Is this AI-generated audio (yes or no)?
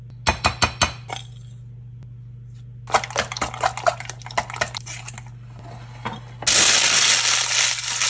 no